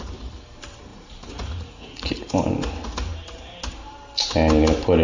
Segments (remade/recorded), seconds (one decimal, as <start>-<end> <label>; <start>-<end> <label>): 0.0-0.9 recorded; 0.9-2.3 remade; 2.3-5.0 recorded